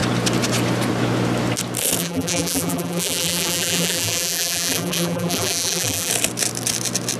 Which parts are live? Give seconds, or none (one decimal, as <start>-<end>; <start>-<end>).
0.0-2.0; 6.1-7.2